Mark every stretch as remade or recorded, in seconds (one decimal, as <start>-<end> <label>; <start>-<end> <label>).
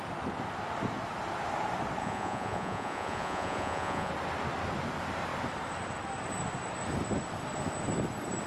0.0-2.0 recorded; 2.0-4.1 remade; 4.1-8.5 recorded